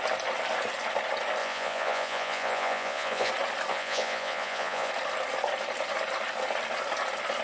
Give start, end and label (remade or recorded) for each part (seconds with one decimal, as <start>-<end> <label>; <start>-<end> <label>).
0.0-1.4 recorded; 1.4-3.3 remade; 3.3-3.7 recorded; 3.7-4.9 remade; 4.9-7.4 recorded

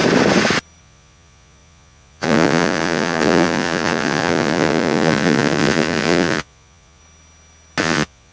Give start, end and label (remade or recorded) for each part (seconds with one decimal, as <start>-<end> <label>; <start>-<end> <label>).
0.0-0.8 recorded; 0.8-7.0 remade; 7.0-7.8 recorded; 7.8-8.3 remade

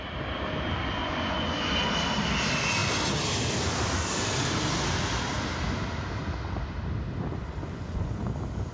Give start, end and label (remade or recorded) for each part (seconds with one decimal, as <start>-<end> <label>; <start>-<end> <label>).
0.0-1.0 recorded; 1.0-1.7 remade; 1.7-7.6 recorded; 7.6-8.1 remade; 8.1-8.7 recorded

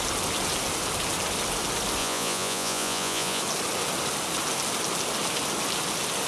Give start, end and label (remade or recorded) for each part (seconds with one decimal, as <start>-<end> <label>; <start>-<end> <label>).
0.0-2.0 recorded; 2.0-3.4 remade; 3.4-6.3 recorded